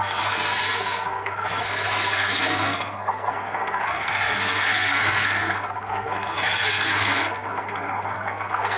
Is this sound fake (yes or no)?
yes